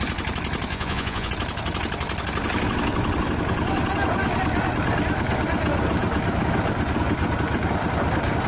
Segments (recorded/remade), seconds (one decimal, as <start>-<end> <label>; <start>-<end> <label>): 0.0-0.7 recorded; 0.7-1.3 remade; 1.3-8.5 recorded